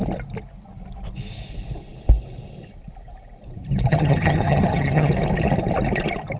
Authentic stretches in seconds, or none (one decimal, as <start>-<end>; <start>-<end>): 0.0-3.9; 5.1-6.4